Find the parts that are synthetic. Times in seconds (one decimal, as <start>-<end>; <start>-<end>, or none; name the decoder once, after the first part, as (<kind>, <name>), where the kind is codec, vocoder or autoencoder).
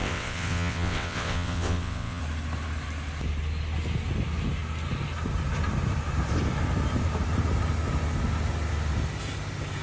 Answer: 0.0-2.2 (vocoder, WaveNeXt)